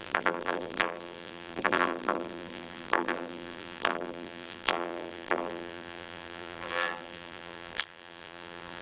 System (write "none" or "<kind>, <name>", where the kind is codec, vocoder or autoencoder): vocoder, BigVGAN v2